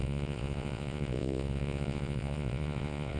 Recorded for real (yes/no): no